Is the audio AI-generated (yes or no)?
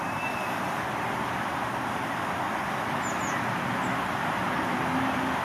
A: no